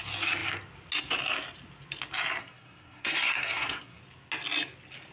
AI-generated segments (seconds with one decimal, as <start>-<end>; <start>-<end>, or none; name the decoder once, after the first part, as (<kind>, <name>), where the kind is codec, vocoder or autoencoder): 2.4-4.0 (codec, SNAC)